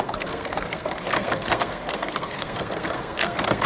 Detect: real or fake fake